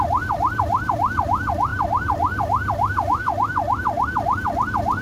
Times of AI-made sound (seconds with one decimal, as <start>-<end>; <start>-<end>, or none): none